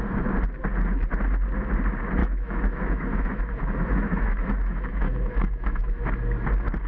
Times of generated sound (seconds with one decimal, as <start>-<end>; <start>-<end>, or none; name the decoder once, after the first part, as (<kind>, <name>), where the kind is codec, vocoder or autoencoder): 2.2-6.0 (autoencoder, DAC-VAE)